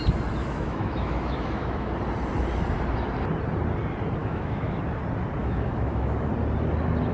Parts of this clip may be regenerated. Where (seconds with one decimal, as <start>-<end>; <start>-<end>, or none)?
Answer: 0.4-1.9; 4.2-4.8; 5.4-6.3